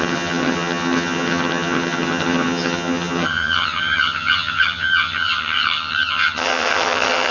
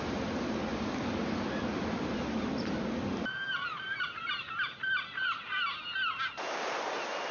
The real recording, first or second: second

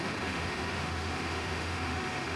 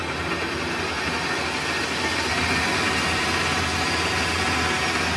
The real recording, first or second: second